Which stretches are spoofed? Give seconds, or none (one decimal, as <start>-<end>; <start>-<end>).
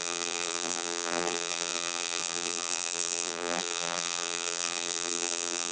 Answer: 0.0-5.7